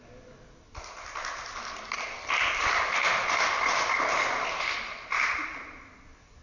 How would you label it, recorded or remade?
recorded